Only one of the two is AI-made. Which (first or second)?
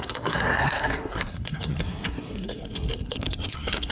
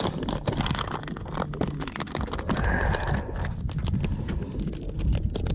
first